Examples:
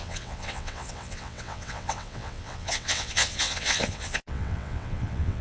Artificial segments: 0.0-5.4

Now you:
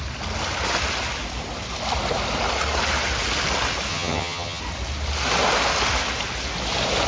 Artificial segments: 3.9-4.6

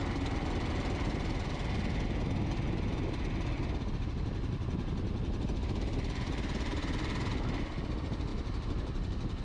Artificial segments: 8.3-9.4